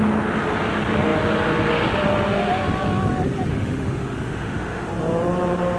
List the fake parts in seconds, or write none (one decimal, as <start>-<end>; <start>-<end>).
3.5-4.9